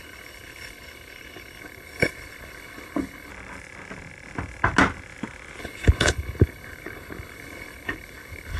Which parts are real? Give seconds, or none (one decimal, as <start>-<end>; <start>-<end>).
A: 3.3-5.6